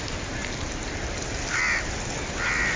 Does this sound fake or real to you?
real